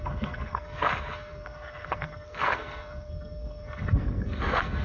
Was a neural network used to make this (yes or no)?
yes